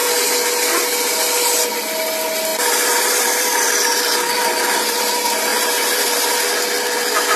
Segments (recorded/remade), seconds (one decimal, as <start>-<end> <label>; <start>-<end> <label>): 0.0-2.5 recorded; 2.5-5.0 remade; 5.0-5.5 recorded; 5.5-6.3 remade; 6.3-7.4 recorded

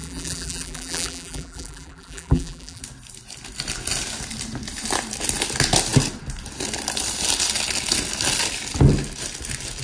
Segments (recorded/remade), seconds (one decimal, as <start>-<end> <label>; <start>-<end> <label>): 0.0-2.8 remade; 2.8-9.8 recorded

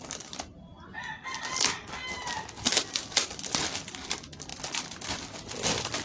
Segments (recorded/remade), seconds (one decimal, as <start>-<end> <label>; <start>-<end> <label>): 0.0-4.5 recorded; 4.5-5.1 remade; 5.1-6.0 recorded

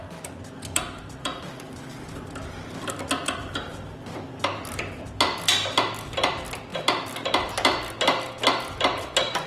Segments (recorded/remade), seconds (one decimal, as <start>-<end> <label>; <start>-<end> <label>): 0.0-6.7 remade; 6.7-8.8 recorded; 8.8-9.5 remade

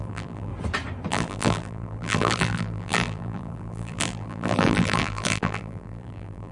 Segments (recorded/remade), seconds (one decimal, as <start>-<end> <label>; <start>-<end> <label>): 0.0-0.5 remade; 0.5-1.1 recorded; 1.1-6.5 remade

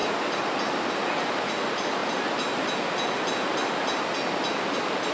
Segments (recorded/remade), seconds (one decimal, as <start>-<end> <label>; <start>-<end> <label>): 0.0-0.5 remade; 0.5-5.1 recorded

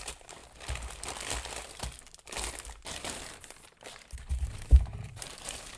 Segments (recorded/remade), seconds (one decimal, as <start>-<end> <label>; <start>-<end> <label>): 0.0-0.4 remade; 0.4-3.9 recorded; 3.9-5.8 remade